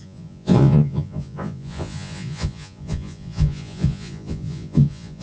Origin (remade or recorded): remade